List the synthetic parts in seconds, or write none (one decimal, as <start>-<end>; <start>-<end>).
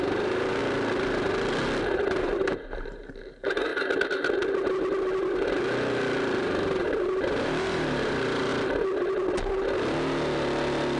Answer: 0.0-0.6; 2.2-3.7; 6.4-8.5